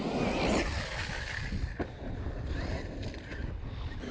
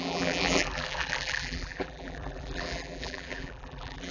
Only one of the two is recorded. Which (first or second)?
first